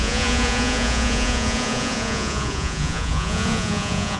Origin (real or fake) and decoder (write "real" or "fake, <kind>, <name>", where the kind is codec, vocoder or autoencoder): fake, vocoder, Vocos